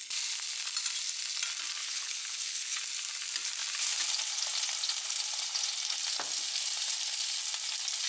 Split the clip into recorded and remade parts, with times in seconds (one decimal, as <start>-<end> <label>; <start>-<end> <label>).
0.0-1.8 recorded; 1.8-2.8 remade; 2.8-8.1 recorded